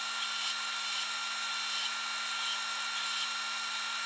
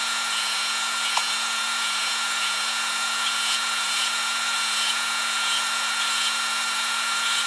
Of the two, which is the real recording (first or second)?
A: first